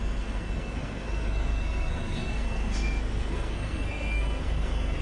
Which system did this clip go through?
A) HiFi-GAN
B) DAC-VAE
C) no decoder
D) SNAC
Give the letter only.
D